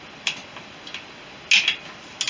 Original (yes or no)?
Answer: yes